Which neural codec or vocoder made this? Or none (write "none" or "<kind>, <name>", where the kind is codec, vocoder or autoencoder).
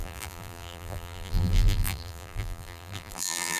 vocoder, BigVGAN v2